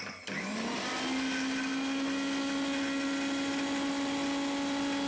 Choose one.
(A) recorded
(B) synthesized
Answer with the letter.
A